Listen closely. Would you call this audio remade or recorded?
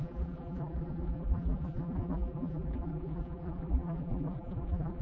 remade